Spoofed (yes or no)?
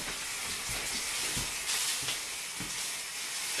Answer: no